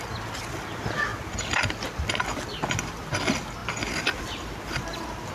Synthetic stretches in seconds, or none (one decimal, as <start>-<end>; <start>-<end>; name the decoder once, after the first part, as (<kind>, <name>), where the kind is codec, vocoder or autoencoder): none